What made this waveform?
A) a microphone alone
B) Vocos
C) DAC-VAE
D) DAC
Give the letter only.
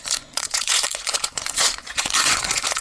B